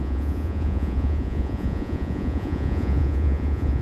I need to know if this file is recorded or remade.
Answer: remade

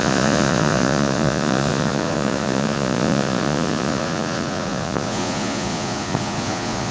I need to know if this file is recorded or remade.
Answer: remade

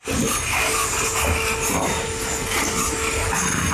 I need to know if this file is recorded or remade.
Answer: recorded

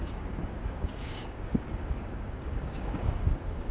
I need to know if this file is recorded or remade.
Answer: remade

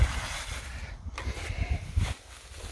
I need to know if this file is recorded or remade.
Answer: recorded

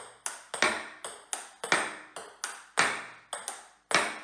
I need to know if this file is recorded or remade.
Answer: recorded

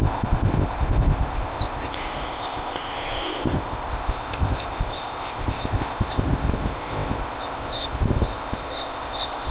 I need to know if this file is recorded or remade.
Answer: remade